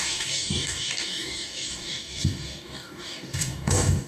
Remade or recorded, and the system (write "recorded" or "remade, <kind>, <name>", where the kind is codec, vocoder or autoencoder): remade, codec, DAC